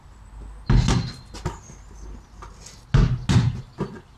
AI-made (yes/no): no